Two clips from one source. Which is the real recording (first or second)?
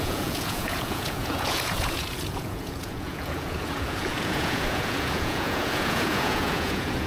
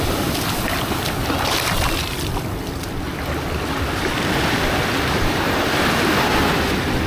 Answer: second